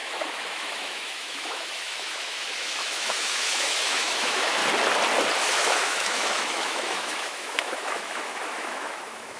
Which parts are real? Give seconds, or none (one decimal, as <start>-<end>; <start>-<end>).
4.6-5.4